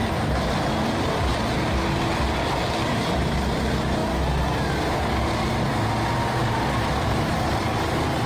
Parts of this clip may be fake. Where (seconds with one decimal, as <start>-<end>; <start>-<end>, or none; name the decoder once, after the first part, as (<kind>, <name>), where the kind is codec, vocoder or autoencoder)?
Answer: 0.8-1.3 (vocoder, BigVGAN v2); 2.8-4.0; 6.4-8.3